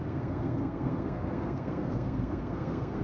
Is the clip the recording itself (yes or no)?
no